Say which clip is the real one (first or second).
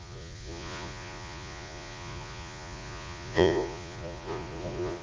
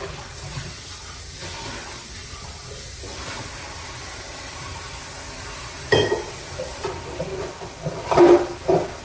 second